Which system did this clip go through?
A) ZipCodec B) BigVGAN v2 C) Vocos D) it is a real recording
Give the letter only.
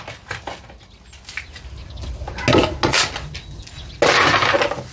D